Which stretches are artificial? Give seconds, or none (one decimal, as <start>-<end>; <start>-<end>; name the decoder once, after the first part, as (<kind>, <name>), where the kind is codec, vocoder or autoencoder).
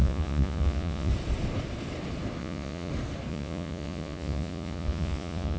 0.0-1.1 (vocoder, Vocos); 2.4-2.9; 3.3-5.6